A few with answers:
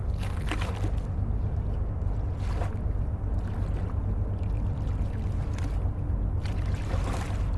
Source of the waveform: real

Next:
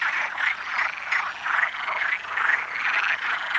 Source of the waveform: real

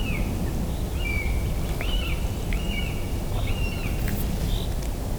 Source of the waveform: real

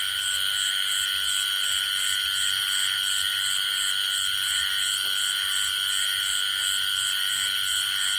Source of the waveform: real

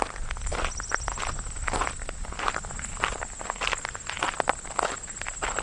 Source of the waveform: real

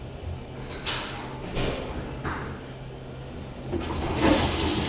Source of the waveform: real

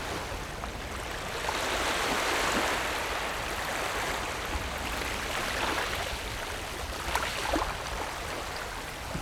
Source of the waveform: real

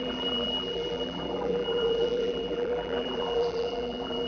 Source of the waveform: fake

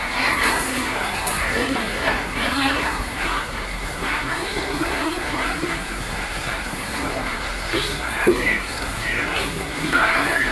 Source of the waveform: fake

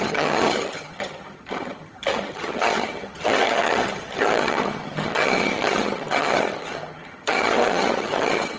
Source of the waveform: fake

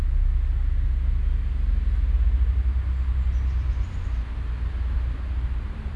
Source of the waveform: real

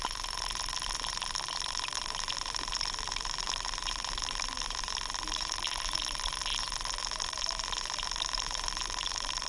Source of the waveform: real